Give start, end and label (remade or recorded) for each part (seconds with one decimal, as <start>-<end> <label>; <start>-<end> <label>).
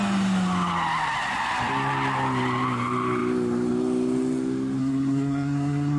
0.0-4.8 recorded; 4.8-6.0 remade